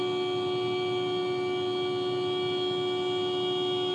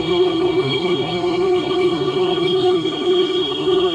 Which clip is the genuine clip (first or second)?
first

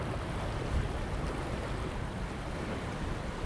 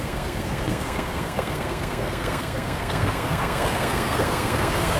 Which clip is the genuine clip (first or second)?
first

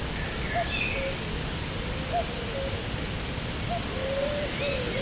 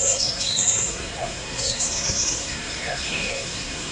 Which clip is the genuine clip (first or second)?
first